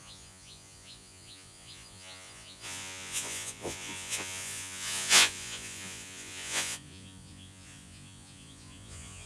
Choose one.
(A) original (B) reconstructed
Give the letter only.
B